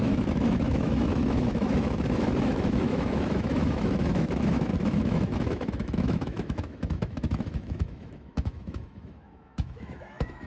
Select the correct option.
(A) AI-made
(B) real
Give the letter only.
A